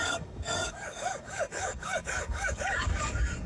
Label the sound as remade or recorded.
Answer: remade